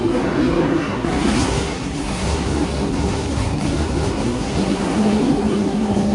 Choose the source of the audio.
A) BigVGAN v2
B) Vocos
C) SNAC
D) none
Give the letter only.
C